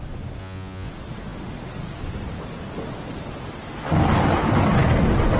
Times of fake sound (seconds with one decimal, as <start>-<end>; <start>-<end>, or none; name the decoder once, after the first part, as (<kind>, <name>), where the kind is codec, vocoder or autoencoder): 0.4-0.9 (vocoder, Vocos)